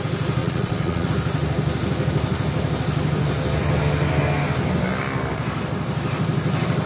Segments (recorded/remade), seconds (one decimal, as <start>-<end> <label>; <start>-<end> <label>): 0.0-0.4 recorded; 0.4-1.1 remade; 1.1-6.9 recorded